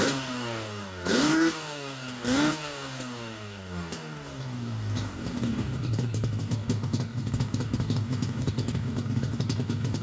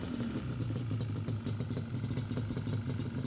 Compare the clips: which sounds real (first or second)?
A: second